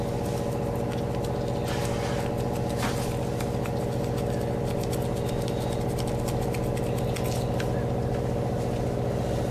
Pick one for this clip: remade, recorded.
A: recorded